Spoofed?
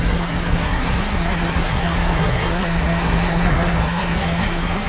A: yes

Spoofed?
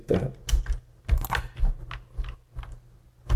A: no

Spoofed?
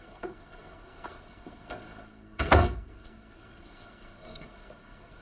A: yes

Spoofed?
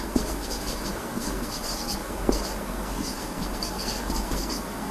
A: yes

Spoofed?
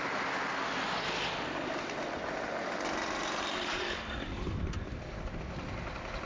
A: no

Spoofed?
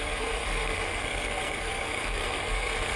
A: yes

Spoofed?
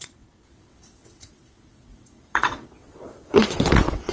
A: yes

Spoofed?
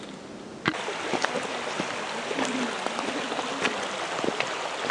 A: no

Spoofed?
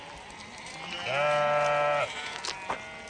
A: no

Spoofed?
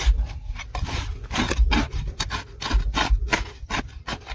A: no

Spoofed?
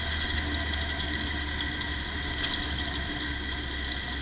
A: no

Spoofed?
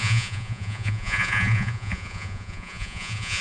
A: yes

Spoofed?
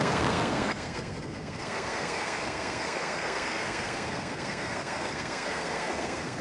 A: yes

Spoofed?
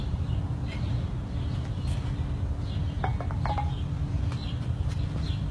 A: no